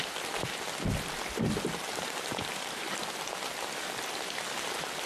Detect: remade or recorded recorded